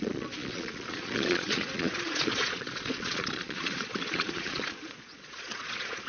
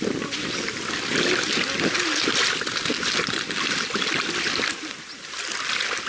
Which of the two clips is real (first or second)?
second